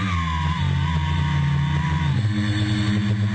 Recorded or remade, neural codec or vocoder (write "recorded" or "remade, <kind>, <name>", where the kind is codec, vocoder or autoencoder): recorded